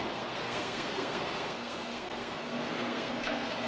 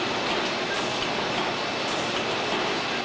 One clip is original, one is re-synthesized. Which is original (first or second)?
second